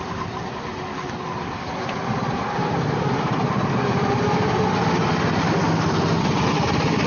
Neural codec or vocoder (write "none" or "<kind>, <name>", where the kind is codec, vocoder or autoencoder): vocoder, BigVGAN v2